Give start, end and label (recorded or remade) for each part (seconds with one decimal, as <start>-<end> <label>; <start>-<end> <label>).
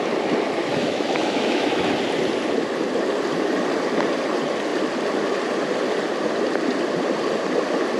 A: 0.0-0.7 recorded; 0.7-1.9 remade; 1.9-8.0 recorded